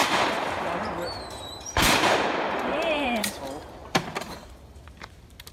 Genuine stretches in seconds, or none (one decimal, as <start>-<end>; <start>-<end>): 3.3-3.8; 4.8-5.5